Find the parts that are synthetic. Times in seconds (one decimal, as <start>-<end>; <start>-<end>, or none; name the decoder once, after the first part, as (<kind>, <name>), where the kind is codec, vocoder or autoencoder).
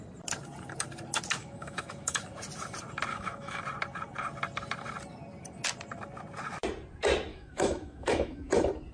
1.4-2.2 (autoencoder, DAC-VAE); 3.1-3.6; 7.3-8.5